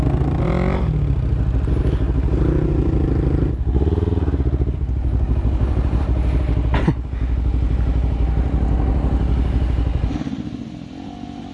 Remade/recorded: recorded